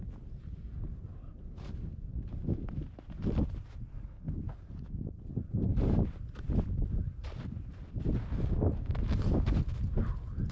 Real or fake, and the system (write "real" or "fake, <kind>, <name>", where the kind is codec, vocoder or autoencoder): real